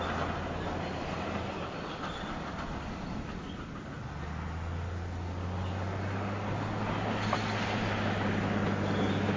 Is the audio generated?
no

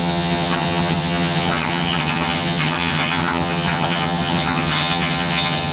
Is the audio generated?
yes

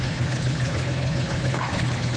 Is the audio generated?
yes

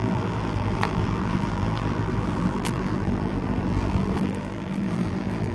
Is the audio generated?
yes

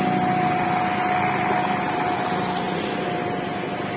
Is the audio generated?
no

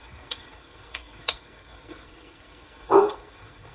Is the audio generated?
yes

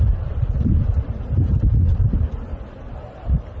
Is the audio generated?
no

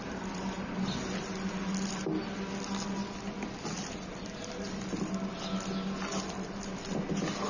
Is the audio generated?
no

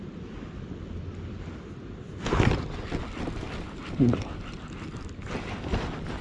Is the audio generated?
no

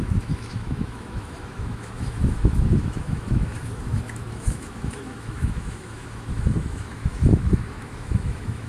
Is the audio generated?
yes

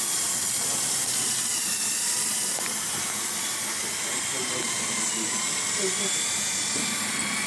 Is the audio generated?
no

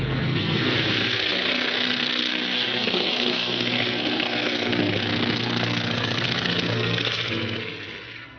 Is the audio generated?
yes